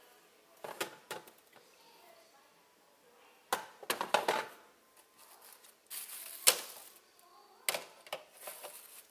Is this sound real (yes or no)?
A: yes